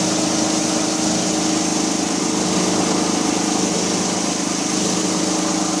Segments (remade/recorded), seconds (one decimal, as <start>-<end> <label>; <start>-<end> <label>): 0.0-5.8 recorded